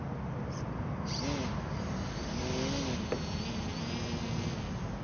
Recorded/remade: recorded